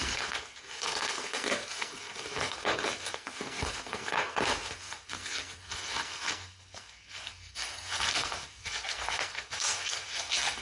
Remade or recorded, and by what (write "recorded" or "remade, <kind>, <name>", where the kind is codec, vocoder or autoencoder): remade, codec, SNAC